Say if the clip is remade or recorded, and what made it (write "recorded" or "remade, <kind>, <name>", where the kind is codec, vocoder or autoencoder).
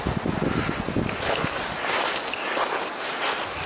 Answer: recorded